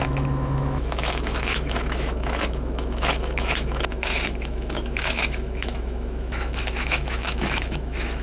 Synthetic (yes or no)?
yes